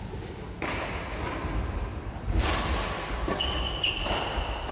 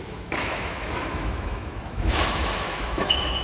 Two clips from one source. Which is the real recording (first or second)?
first